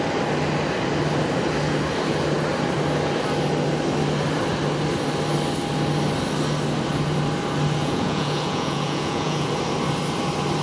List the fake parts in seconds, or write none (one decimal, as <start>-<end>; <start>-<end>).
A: 7.8-9.5